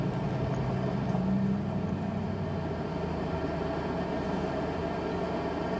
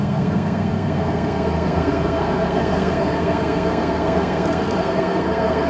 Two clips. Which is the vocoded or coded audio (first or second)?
second